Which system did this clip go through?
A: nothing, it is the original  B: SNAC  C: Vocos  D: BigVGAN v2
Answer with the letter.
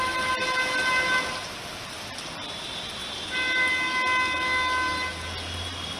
A